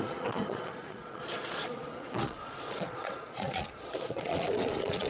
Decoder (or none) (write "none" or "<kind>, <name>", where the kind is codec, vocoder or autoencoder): vocoder, Vocos